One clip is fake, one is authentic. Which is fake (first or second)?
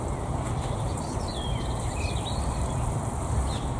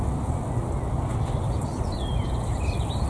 first